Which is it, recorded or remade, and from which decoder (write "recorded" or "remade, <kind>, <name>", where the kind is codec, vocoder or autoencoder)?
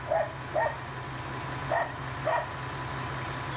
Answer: recorded